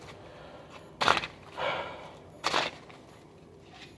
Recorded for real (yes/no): yes